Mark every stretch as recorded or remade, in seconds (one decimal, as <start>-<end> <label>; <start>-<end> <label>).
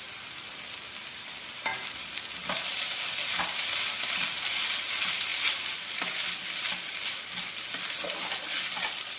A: 0.0-9.2 recorded